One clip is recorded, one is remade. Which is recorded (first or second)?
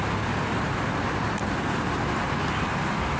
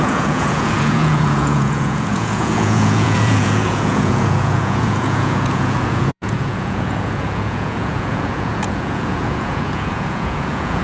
first